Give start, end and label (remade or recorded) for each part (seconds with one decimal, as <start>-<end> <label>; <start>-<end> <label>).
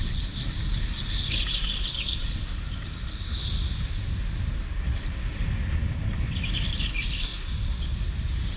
0.0-8.6 recorded